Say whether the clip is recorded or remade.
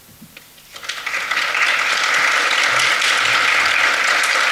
recorded